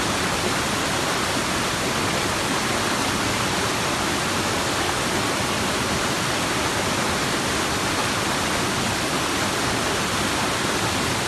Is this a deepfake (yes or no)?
no